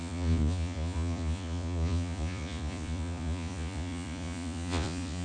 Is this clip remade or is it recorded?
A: remade